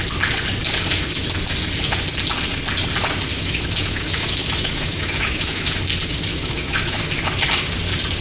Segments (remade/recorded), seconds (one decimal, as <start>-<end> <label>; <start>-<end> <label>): 0.0-3.3 recorded; 3.3-5.8 remade; 5.8-6.3 recorded; 6.3-7.0 remade; 7.0-8.2 recorded